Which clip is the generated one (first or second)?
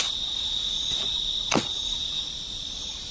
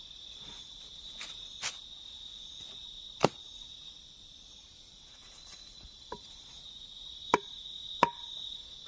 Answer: second